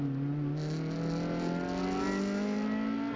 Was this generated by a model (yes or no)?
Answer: no